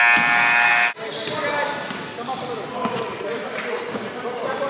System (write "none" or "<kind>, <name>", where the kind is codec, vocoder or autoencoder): none